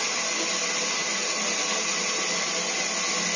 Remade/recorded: recorded